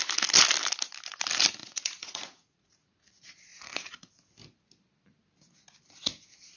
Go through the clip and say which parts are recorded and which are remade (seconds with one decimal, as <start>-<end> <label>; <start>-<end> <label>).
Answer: 0.0-1.6 recorded; 1.6-3.1 remade; 3.1-3.5 recorded; 3.5-4.1 remade; 4.1-6.6 recorded